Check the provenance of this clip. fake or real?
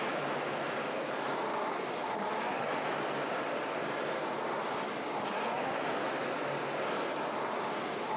real